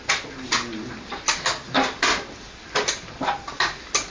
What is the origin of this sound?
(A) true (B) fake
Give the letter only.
A